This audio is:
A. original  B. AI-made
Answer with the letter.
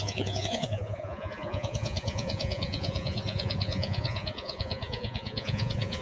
B